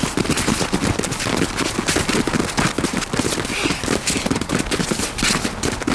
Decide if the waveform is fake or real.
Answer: real